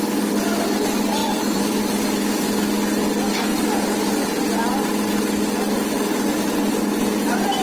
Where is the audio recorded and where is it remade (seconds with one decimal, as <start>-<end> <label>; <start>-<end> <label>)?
0.0-1.2 recorded; 1.2-2.2 remade; 2.2-3.5 recorded; 3.5-4.0 remade; 4.0-7.6 recorded